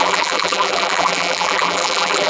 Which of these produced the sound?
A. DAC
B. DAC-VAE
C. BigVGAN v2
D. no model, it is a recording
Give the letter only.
C